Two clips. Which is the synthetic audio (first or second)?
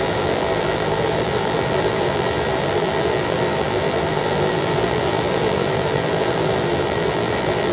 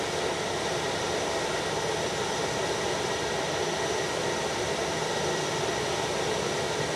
first